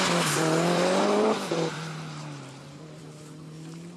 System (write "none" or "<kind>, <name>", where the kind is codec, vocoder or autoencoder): none